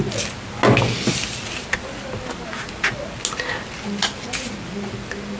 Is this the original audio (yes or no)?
yes